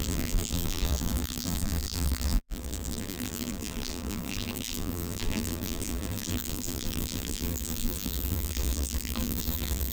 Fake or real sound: fake